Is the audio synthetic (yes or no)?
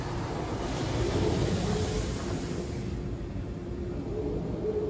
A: no